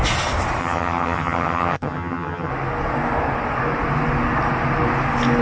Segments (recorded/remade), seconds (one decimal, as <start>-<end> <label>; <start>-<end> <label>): 0.0-0.6 recorded; 0.6-2.5 remade; 2.5-5.4 recorded